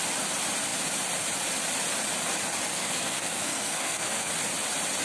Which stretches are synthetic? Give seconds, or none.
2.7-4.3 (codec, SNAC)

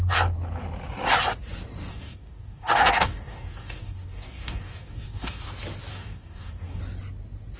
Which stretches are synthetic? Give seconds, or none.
1.9-5.4 (codec, DAC); 5.9-6.8

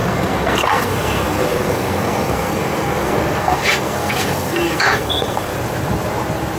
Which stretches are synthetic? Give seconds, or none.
0.0-5.5 (codec, SNAC)

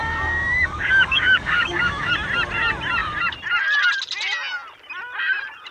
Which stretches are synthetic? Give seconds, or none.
0.0-2.1 (codec, DAC)